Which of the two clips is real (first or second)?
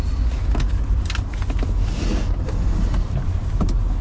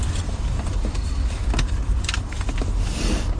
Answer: first